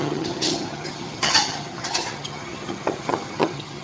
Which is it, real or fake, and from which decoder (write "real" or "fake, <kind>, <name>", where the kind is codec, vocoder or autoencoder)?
fake, vocoder, HiFi-GAN